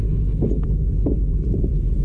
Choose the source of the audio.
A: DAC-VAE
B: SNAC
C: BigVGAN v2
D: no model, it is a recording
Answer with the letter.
D